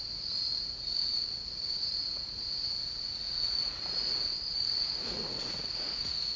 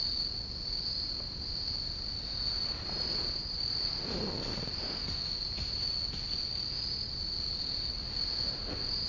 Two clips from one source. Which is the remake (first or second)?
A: first